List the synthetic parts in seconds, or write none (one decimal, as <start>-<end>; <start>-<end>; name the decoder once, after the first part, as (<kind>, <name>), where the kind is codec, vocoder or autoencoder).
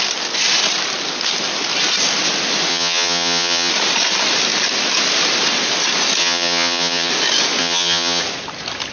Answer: 2.7-3.7 (vocoder, HiFi-GAN); 6.2-7.1; 7.6-8.2